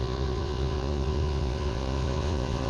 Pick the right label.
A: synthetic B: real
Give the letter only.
A